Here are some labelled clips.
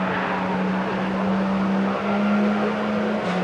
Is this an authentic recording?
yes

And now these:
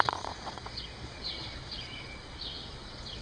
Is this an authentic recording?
no